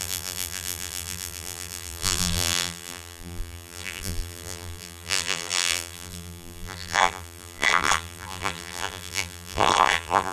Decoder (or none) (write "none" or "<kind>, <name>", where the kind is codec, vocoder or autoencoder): vocoder, BigVGAN v2